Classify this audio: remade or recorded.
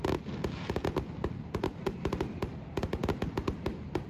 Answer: recorded